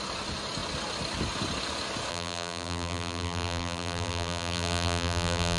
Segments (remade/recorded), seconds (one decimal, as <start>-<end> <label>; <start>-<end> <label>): 0.0-2.1 recorded; 2.1-5.6 remade